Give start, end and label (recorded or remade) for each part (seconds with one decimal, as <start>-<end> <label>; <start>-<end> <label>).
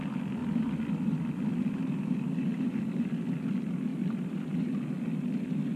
0.0-0.4 recorded; 0.4-3.2 remade; 3.2-3.9 recorded; 3.9-4.7 remade; 4.7-5.8 recorded